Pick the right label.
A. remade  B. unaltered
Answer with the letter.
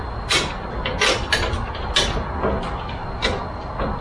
B